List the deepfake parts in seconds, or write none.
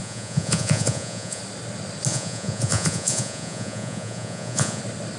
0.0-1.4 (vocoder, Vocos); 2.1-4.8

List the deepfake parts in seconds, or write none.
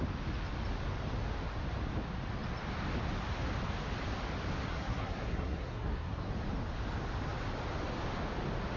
4.7-6.3 (codec, SNAC)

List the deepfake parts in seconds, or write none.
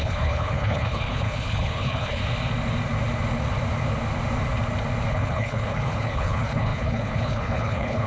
0.0-2.2 (codec, HILCodec); 5.1-8.1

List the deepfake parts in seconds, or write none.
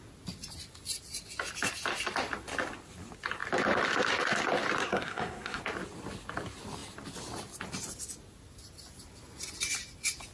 4.8-5.6 (codec, SNAC)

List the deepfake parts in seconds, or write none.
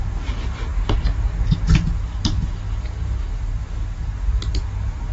none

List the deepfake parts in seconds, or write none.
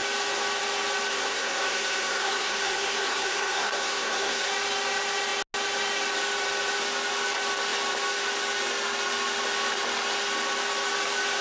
1.1-4.5 (codec, SNAC)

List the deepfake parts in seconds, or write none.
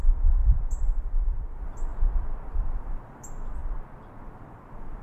0.0-1.9 (vocoder, BigVGAN v2); 2.8-3.6; 4.2-5.0